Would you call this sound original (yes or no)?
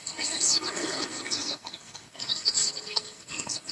no